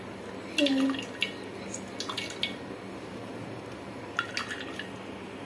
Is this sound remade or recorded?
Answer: recorded